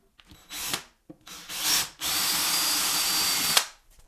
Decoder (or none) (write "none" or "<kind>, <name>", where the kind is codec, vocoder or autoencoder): none